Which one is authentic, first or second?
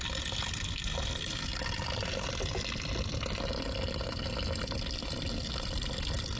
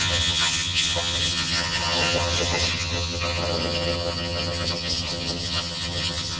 first